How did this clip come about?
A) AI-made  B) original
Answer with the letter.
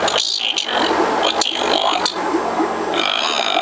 B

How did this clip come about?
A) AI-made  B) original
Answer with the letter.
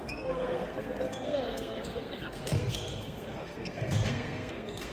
A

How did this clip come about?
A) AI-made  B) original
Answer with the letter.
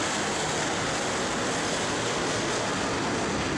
B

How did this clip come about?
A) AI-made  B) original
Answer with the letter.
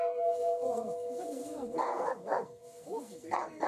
A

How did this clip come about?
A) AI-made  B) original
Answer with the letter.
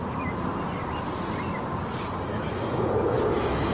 B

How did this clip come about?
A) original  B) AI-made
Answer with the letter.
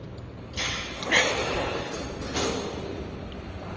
A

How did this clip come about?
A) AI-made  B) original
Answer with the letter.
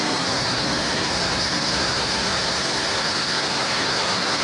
A